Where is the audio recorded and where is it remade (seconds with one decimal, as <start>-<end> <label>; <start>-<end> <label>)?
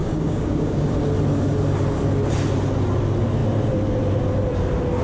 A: 0.0-0.9 remade; 0.9-5.0 recorded